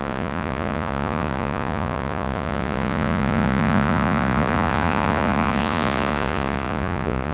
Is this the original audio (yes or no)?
no